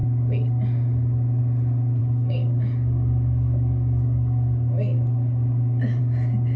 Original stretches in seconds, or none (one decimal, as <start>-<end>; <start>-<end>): 0.0-2.0; 6.0-6.6